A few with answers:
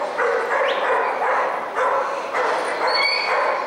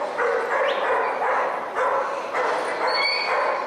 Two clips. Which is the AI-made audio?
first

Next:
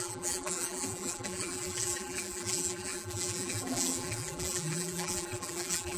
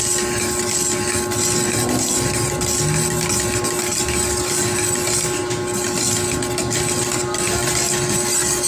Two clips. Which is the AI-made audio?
first